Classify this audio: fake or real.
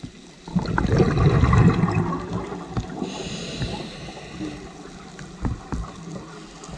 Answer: real